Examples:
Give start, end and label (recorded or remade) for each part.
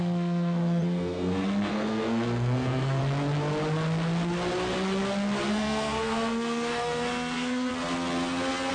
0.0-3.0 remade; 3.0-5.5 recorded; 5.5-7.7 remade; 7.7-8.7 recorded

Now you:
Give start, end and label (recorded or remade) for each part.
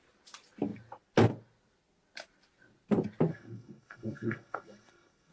0.0-3.3 recorded; 3.3-5.3 remade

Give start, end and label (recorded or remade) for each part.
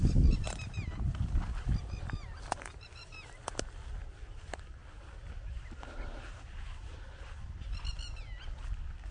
0.0-9.1 recorded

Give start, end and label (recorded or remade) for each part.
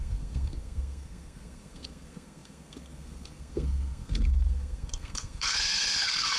0.0-6.4 remade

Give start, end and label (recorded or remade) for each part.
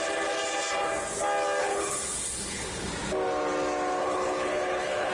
0.0-1.6 recorded; 1.6-2.9 remade; 2.9-4.0 recorded; 4.0-5.1 remade